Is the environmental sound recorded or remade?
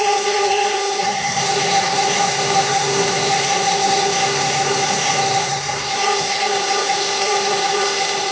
remade